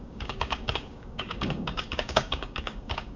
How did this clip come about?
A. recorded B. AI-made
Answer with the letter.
B